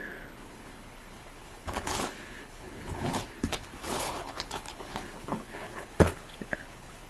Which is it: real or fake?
fake